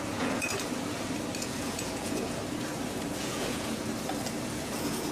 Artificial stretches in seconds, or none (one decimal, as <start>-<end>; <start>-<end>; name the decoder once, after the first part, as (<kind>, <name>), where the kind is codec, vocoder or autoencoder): 0.0-0.5 (vocoder, Vocos); 1.4-2.4; 3.2-3.8; 4.6-5.1